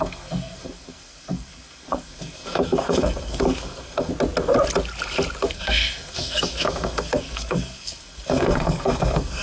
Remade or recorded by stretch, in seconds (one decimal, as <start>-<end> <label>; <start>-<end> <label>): 0.0-4.1 remade; 4.1-5.4 recorded; 5.4-9.4 remade